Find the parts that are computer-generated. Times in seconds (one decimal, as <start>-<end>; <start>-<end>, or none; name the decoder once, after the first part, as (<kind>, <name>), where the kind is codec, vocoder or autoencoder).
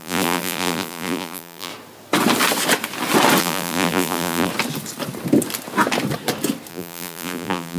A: 0.0-1.7 (vocoder, BigVGAN v2); 3.4-4.5; 6.7-7.8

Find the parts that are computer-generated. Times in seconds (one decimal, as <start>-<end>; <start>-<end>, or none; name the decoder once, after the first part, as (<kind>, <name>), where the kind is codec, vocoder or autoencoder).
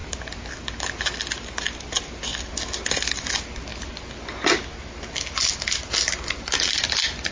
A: 0.0-0.5 (vocoder, BigVGAN v2)